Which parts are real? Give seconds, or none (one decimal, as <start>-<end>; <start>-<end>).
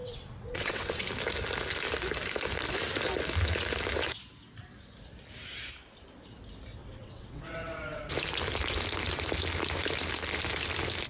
1.0-6.8; 8.0-11.1